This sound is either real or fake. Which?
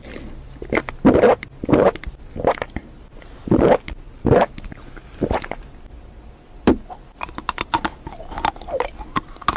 real